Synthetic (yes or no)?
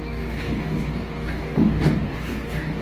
yes